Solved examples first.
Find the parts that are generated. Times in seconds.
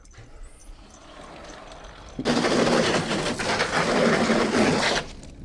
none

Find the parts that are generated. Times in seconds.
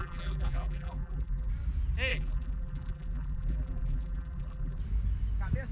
0.0-1.5; 2.1-4.8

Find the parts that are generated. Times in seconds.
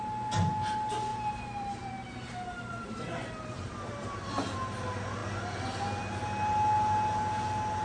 1.1-4.3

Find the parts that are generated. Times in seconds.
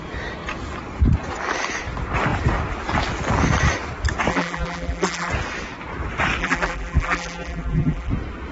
4.3-5.3; 6.4-8.1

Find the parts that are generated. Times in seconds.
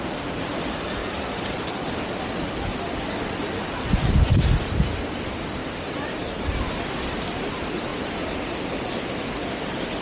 0.0-1.0; 1.9-5.6; 6.2-7.9; 9.4-10.0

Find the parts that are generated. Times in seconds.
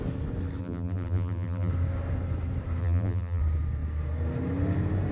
0.6-1.7; 2.8-3.4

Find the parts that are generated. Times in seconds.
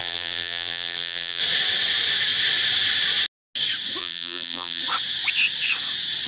0.0-1.4; 4.0-4.8